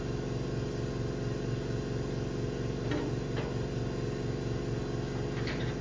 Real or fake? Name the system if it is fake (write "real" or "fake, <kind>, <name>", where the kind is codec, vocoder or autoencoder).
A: real